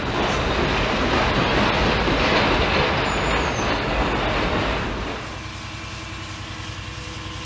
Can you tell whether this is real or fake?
real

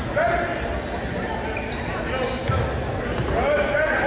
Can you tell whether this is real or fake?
real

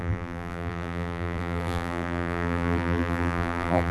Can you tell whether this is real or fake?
fake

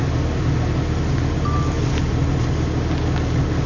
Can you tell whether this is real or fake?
real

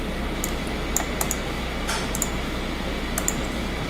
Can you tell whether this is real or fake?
real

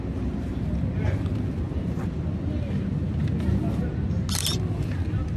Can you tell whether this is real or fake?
real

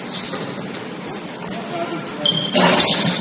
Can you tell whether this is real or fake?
real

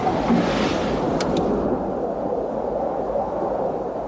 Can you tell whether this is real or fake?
real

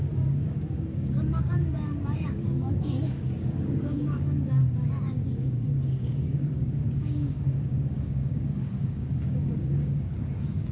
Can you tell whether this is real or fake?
fake